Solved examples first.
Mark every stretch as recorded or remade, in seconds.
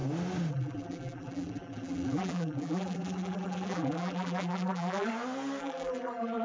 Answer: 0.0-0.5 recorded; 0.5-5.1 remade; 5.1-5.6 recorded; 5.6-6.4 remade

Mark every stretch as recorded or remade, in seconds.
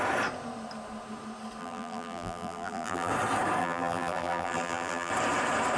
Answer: 0.0-1.6 recorded; 1.6-3.1 remade; 3.1-3.6 recorded; 3.6-5.1 remade; 5.1-5.8 recorded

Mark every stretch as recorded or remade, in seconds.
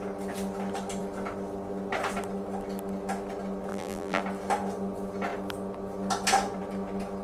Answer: 0.0-3.7 recorded; 3.7-4.2 remade; 4.2-7.2 recorded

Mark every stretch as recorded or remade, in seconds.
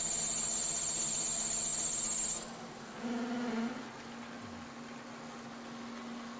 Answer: 0.0-6.4 recorded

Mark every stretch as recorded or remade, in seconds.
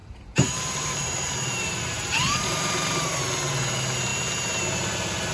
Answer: 0.0-3.2 remade; 3.2-5.3 recorded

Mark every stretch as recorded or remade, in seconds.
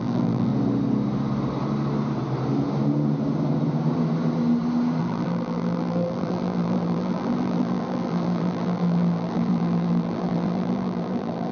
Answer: 0.0-0.5 remade; 0.5-5.0 recorded; 5.0-11.5 remade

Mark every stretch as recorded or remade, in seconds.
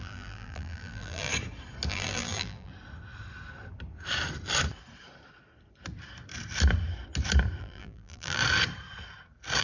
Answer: 0.0-1.3 remade; 1.3-1.9 recorded; 1.9-2.7 remade; 2.7-7.6 recorded; 7.6-8.4 remade; 8.4-9.6 recorded